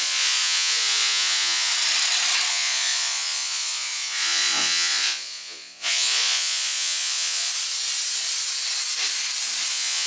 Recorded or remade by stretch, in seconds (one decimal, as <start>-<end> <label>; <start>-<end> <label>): 0.0-1.7 remade; 1.7-2.5 recorded; 2.5-7.5 remade; 7.5-9.7 recorded; 9.7-10.1 remade